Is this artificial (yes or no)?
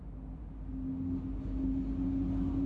no